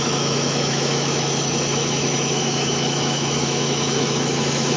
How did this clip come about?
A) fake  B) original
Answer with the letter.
A